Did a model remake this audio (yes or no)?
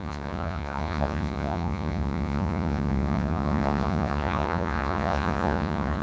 yes